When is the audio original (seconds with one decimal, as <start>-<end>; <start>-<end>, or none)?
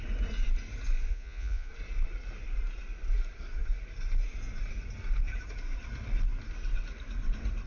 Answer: 0.0-1.1; 1.7-7.7